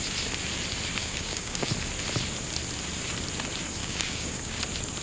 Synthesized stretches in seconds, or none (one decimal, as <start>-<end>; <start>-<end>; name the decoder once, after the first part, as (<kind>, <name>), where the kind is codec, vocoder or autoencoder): 1.0-1.7 (codec, DAC); 3.8-4.6